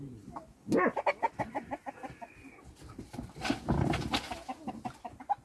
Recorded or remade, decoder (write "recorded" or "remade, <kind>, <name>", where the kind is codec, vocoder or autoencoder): recorded